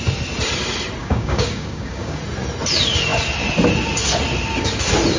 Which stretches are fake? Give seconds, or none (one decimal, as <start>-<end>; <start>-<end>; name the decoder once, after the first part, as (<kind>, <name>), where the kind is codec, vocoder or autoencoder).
1.0-2.2 (codec, DAC)